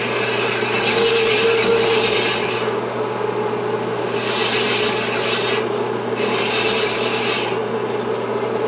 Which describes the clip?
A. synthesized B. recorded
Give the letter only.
B